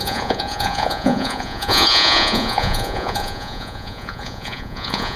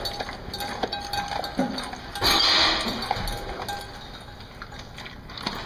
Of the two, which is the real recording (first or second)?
second